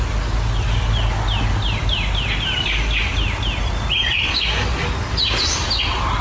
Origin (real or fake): real